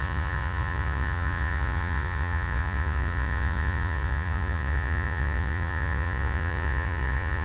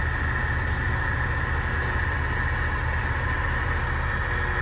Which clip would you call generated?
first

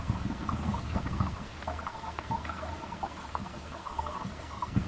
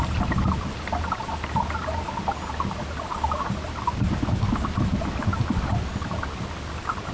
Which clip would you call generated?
first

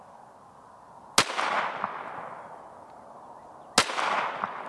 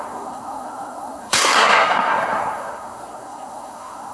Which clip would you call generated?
second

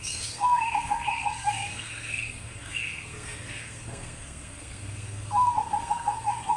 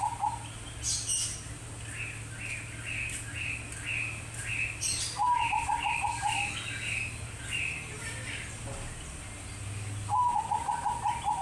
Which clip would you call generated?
first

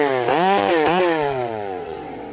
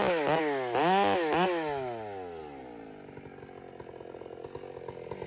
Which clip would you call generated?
first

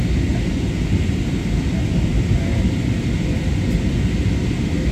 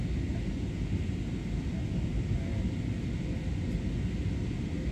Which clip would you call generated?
first